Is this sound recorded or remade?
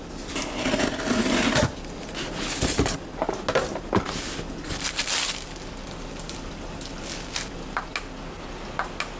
recorded